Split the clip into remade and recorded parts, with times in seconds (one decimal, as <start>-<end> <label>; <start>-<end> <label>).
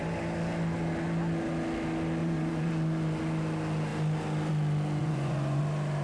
0.0-2.2 recorded; 2.2-2.7 remade; 2.7-5.0 recorded; 5.0-5.6 remade; 5.6-6.0 recorded